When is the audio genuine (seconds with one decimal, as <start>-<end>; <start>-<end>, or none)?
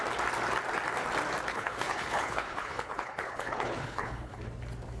0.0-1.5; 4.5-5.0